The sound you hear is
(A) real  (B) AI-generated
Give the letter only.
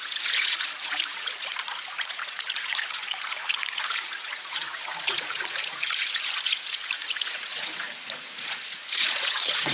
B